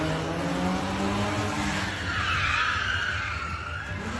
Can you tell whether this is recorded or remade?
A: recorded